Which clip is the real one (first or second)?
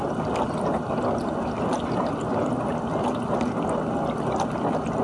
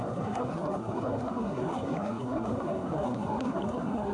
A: first